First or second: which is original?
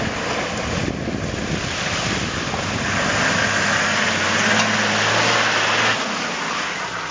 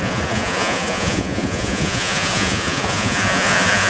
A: first